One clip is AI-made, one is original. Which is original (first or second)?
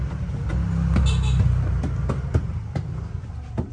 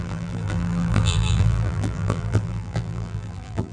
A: first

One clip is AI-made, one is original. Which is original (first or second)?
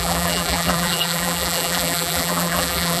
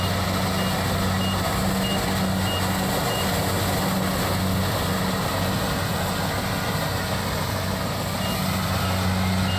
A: second